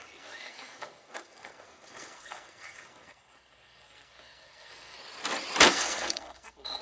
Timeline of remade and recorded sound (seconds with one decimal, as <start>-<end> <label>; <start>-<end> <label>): 0.0-5.0 remade; 5.0-5.7 recorded; 5.7-6.8 remade